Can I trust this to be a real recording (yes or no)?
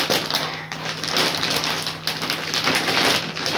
yes